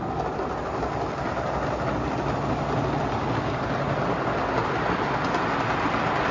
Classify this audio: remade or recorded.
recorded